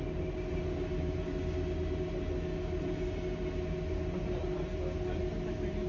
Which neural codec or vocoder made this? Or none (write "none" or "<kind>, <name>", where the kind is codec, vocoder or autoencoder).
none